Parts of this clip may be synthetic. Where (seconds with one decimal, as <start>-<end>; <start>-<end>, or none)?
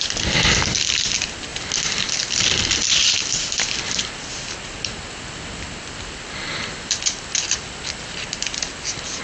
none